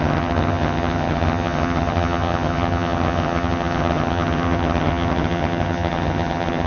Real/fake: fake